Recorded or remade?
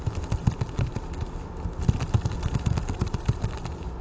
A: recorded